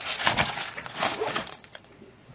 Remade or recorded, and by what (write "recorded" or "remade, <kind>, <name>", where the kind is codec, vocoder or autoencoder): remade, vocoder, Vocos